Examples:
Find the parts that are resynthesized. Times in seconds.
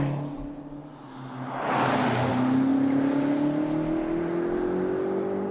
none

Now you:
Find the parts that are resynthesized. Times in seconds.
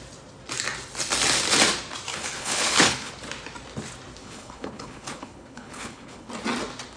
2.1-3.1 (codec, HILCodec); 4.2-6.3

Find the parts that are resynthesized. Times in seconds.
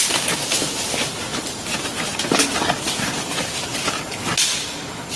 none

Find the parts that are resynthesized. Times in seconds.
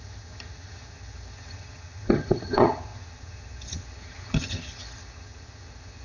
0.0-6.0 (vocoder, HiFi-GAN)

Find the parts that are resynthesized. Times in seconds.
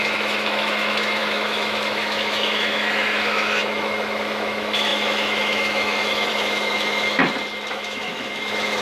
0.0-7.2 (autoencoder, DAC-VAE); 7.7-8.8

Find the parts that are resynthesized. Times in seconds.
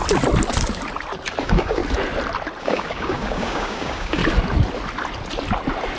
1.4-1.8 (codec, DAC); 2.6-4.2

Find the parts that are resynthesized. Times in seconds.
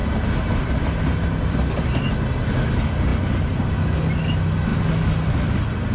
none